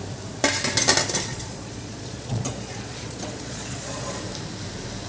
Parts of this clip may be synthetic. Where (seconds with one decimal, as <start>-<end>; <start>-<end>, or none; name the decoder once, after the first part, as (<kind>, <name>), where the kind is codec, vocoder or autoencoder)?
1.3-4.2 (vocoder, Vocos)